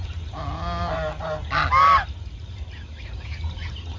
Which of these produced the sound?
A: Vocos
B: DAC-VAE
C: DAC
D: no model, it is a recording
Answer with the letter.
D